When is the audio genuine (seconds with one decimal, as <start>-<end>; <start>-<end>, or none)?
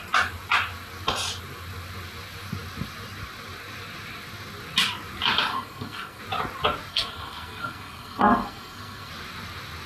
0.0-5.5; 6.2-6.9; 9.1-9.9